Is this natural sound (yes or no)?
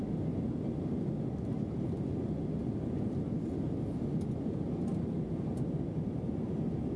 yes